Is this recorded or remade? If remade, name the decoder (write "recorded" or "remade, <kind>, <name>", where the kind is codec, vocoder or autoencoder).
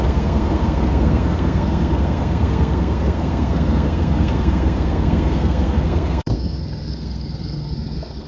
remade, codec, SNAC